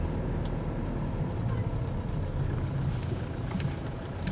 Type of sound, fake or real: real